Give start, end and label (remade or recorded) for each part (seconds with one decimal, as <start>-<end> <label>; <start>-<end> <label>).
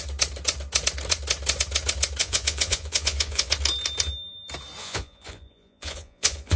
0.0-2.2 recorded; 2.2-3.5 remade; 3.5-4.8 recorded; 4.8-6.6 remade